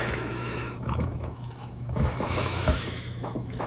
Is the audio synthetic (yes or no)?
yes